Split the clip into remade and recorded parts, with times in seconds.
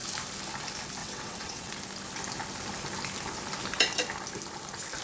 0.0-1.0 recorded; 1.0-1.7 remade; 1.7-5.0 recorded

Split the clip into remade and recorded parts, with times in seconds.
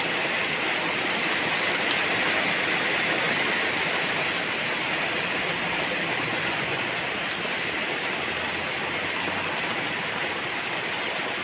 0.0-6.3 recorded; 6.3-6.8 remade; 6.8-11.4 recorded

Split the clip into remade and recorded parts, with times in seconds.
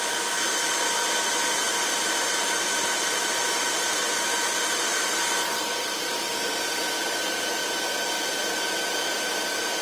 0.0-9.8 recorded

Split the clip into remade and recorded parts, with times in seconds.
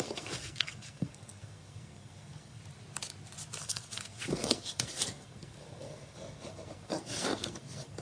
0.0-2.6 remade; 2.6-3.6 recorded; 3.6-8.0 remade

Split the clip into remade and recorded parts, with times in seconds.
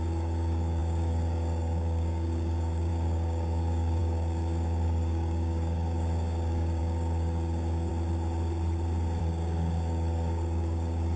0.0-7.9 remade; 7.9-9.2 recorded; 9.2-11.2 remade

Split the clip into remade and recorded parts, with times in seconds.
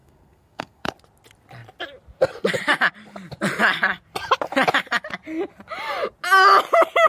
0.0-0.9 remade; 0.9-7.1 recorded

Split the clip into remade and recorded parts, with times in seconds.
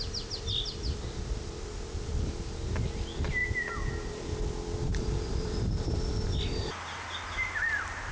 0.0-4.9 recorded; 4.9-6.0 remade; 6.0-8.1 recorded